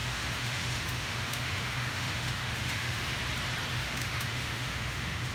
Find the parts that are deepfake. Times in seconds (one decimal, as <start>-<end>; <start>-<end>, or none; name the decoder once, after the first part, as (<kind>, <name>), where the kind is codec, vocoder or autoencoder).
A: 0.0-3.2 (autoencoder, DAC-VAE); 3.7-5.3